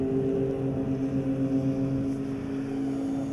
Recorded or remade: recorded